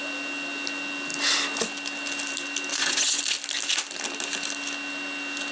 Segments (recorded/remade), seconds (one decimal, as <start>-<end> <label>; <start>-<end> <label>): 0.0-2.7 recorded; 2.7-3.2 remade; 3.2-5.5 recorded